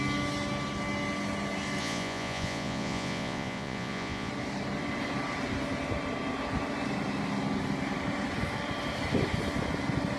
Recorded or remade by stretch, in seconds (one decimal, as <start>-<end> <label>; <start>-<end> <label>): 0.0-1.8 recorded; 1.8-4.3 remade; 4.3-10.2 recorded